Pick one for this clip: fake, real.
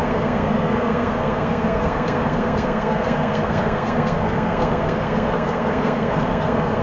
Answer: fake